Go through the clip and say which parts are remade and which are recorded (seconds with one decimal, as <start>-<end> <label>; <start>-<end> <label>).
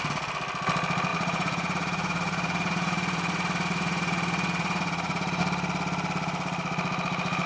0.0-1.1 recorded; 1.1-5.4 remade; 5.4-7.5 recorded